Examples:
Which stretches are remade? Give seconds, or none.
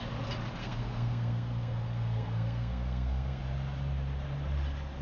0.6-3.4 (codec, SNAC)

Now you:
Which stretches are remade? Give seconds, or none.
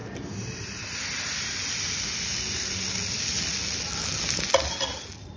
none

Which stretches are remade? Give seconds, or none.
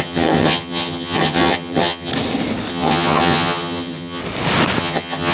0.0-2.1 (vocoder, HiFi-GAN); 2.7-4.2; 4.8-5.3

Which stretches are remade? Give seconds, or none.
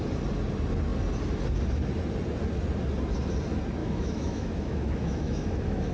3.8-5.9 (autoencoder, DAC-VAE)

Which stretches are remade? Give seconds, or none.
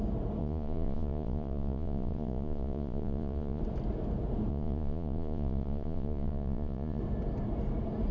0.4-3.6 (vocoder, Vocos); 4.5-7.0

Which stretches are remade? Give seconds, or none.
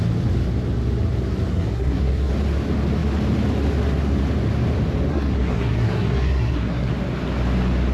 1.5-2.3 (codec, SNAC); 5.1-6.9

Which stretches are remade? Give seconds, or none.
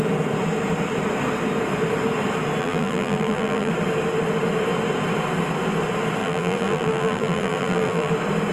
2.6-3.7 (vocoder, BigVGAN v2); 6.2-8.1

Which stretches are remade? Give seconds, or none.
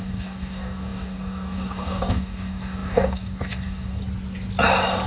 0.0-4.0 (codec, DAC)